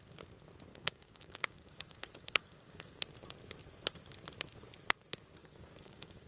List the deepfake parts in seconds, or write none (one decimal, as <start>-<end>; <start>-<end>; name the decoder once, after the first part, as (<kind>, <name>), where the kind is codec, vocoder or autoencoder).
0.7-3.0 (codec, DAC); 5.4-6.3